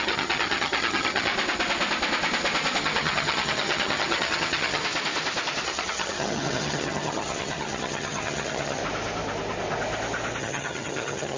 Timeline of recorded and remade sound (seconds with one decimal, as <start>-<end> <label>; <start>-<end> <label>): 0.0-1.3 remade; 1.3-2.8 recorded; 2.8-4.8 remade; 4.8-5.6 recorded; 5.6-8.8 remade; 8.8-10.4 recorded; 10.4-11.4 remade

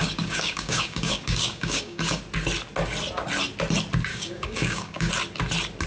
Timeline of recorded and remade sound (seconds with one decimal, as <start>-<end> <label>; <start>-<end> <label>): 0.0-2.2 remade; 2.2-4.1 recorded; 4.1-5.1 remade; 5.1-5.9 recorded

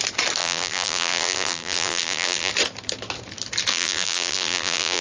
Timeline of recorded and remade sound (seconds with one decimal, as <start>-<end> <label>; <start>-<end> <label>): 0.0-0.4 recorded; 0.4-2.5 remade; 2.5-3.7 recorded; 3.7-5.0 remade